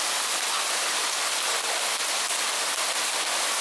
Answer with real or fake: real